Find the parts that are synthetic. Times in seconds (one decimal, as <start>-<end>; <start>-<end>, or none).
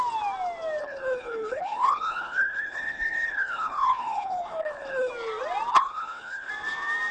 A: 0.8-5.1; 5.7-6.5